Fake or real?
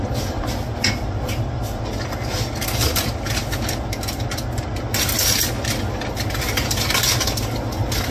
real